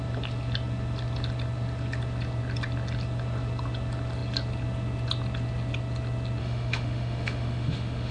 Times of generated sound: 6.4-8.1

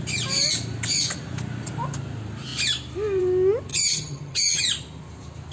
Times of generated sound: 3.7-4.6

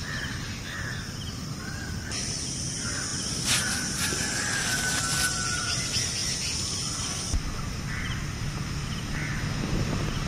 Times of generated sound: 3.1-4.1

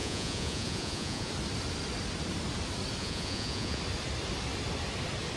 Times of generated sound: 0.0-1.3; 3.0-3.8

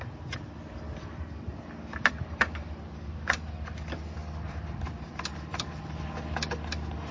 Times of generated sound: 4.2-6.0